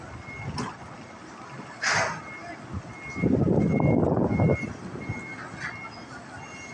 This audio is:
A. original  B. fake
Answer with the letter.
A